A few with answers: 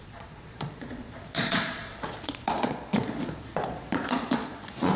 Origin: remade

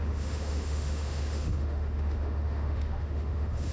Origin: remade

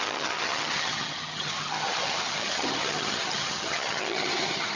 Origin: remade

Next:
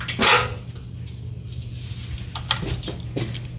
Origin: recorded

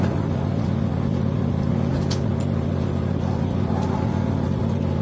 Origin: recorded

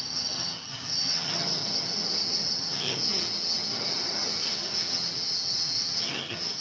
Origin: remade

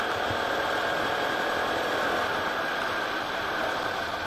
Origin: recorded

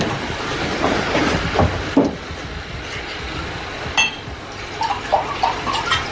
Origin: recorded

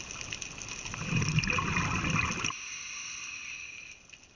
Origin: recorded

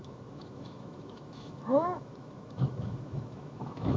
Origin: remade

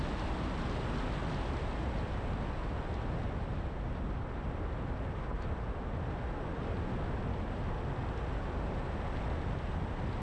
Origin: recorded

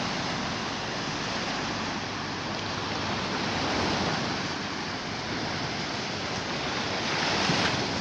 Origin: recorded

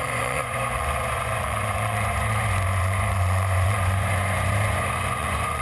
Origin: remade